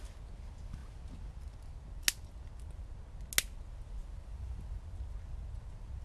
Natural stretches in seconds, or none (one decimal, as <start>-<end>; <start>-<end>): 0.0-6.0